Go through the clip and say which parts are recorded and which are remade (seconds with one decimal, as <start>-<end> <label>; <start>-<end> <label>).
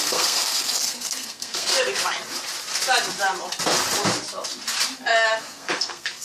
0.0-1.7 remade; 1.7-5.4 recorded; 5.4-6.2 remade